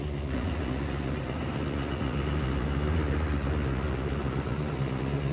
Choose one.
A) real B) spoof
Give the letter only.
B